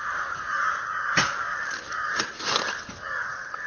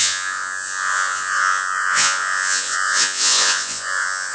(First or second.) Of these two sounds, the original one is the first